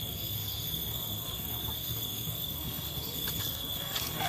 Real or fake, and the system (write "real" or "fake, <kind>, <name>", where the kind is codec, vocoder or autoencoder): fake, codec, SNAC